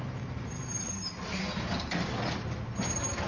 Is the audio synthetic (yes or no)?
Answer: no